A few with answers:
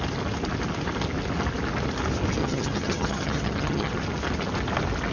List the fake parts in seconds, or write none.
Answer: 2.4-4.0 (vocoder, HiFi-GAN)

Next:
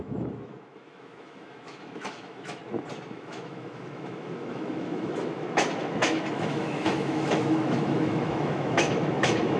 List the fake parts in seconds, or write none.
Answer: 0.0-2.6 (autoencoder, DAC-VAE); 3.1-9.6